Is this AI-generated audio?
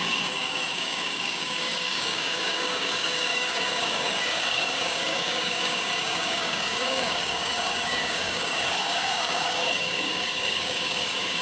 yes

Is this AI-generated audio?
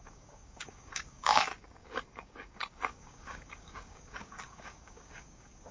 yes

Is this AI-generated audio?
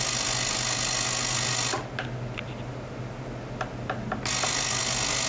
no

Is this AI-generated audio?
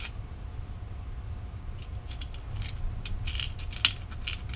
no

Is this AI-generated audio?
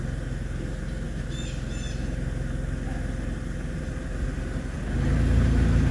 no